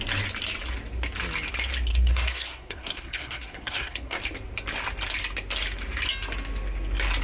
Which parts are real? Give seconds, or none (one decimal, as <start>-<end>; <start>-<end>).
0.0-1.9; 4.2-7.2